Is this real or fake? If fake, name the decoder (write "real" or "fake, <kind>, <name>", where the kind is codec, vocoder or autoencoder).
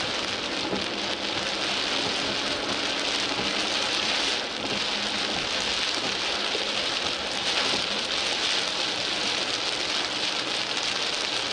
real